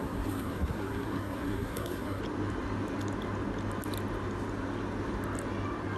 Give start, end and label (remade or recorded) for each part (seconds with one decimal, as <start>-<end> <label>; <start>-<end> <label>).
0.0-2.2 remade; 2.2-6.0 recorded

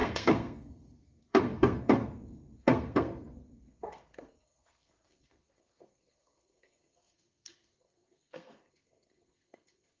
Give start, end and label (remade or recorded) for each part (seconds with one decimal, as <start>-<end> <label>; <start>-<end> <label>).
0.0-10.0 remade

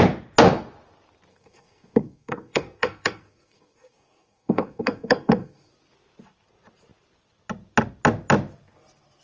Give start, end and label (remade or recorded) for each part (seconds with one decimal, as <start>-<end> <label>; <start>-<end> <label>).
0.0-1.3 recorded; 1.3-5.7 remade; 5.7-9.2 recorded

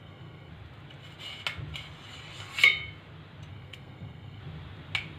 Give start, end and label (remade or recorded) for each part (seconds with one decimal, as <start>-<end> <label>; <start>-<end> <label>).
0.0-0.5 remade; 0.5-3.5 recorded; 3.5-4.4 remade; 4.4-5.2 recorded

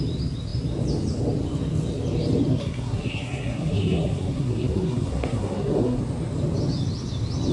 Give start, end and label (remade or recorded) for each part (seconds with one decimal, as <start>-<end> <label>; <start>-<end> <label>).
0.0-2.5 recorded; 2.5-6.0 remade; 6.0-7.5 recorded

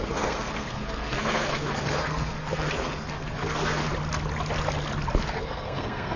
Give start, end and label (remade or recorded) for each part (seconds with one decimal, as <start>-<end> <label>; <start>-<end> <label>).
0.0-3.9 remade; 3.9-5.2 recorded; 5.2-6.2 remade

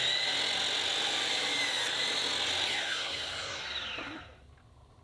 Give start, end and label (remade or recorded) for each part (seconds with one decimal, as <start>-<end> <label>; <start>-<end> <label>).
0.0-2.7 recorded; 2.7-3.6 remade; 3.6-5.0 recorded

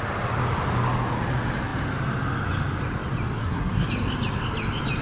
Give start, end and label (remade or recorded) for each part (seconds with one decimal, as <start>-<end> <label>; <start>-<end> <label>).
0.0-3.4 recorded; 3.4-3.9 remade; 3.9-5.0 recorded